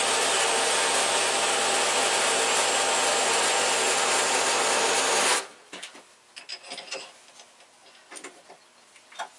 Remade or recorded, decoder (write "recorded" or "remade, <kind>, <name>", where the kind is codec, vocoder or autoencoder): recorded